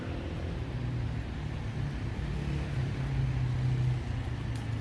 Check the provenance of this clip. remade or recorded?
recorded